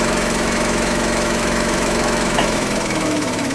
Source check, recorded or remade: remade